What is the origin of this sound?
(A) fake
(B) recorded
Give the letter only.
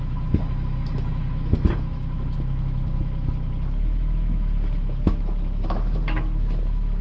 A